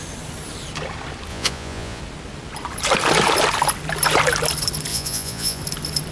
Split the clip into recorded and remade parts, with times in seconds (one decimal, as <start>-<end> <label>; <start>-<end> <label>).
0.0-1.3 recorded; 1.3-2.0 remade; 2.0-4.9 recorded; 4.9-5.6 remade; 5.6-6.1 recorded